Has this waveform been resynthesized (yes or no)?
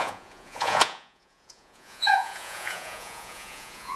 yes